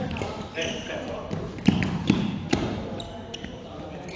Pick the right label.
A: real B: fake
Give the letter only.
A